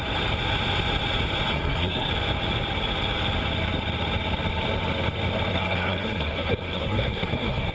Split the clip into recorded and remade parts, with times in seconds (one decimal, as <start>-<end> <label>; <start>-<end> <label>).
0.0-1.5 recorded; 1.5-2.1 remade; 2.1-5.5 recorded; 5.5-7.7 remade